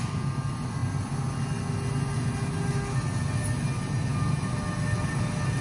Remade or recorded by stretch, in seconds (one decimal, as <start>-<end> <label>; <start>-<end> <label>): 0.0-5.6 recorded